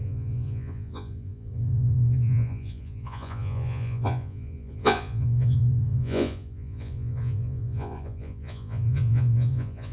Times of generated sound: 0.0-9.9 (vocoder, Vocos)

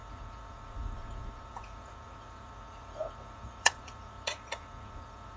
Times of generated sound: 0.0-5.4 (vocoder, Vocos)

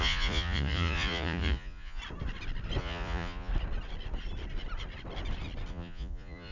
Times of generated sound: 0.0-2.0 (vocoder, Vocos); 2.8-3.5; 5.7-6.5

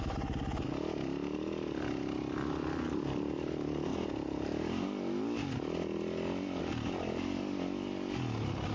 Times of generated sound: none

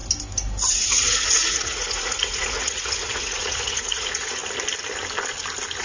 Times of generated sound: 0.7-4.4 (vocoder, Vocos)